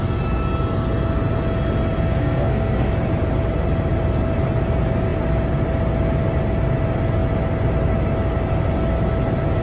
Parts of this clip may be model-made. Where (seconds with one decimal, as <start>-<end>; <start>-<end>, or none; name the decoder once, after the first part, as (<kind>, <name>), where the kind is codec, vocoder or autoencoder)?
2.2-2.9 (codec, SNAC)